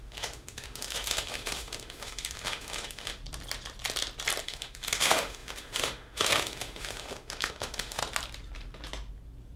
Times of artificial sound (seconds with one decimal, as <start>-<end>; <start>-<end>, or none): 0.0-3.2; 4.4-8.0